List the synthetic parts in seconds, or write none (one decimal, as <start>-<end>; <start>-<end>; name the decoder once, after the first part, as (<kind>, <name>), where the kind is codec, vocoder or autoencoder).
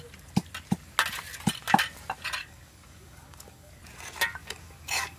2.4-3.8 (codec, DAC); 4.4-5.2